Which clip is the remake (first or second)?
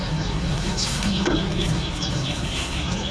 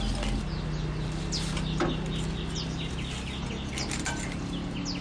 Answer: first